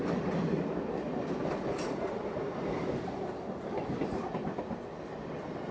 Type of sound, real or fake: real